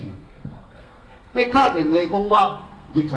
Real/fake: fake